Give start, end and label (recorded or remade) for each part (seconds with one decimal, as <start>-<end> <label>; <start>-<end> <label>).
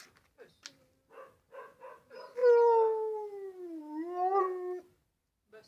0.0-5.7 recorded